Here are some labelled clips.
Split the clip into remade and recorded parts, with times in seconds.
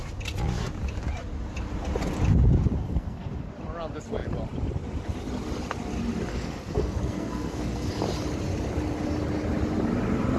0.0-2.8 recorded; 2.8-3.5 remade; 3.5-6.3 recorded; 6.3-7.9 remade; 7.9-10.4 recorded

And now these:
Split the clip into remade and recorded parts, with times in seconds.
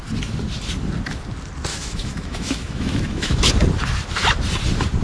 0.0-1.7 recorded; 1.7-3.5 remade; 3.5-5.0 recorded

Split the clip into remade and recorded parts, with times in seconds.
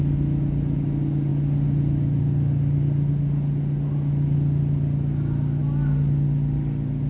0.0-7.1 recorded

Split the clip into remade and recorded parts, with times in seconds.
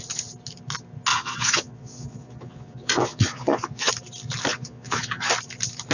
0.0-1.1 recorded; 1.1-3.9 remade; 3.9-4.5 recorded; 4.5-5.3 remade; 5.3-5.9 recorded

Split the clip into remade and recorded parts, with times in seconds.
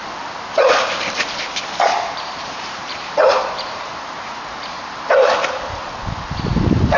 0.0-1.9 recorded; 1.9-5.9 remade; 5.9-7.0 recorded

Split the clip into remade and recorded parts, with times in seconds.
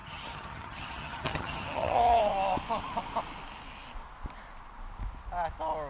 0.0-2.2 remade; 2.2-5.9 recorded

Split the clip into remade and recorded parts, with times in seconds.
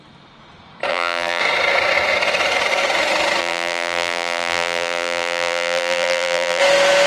0.0-0.9 recorded; 0.9-1.4 remade; 1.4-3.4 recorded; 3.4-6.6 remade; 6.6-7.1 recorded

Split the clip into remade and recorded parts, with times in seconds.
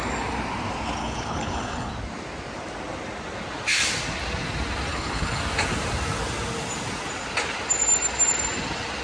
0.0-1.0 recorded; 1.0-1.9 remade; 1.9-4.9 recorded; 4.9-5.4 remade; 5.4-9.0 recorded